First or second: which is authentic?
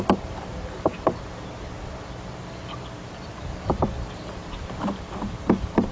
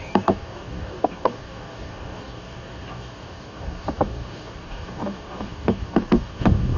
first